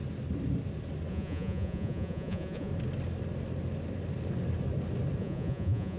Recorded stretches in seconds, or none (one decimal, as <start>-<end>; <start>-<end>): 0.0-1.1; 2.7-5.2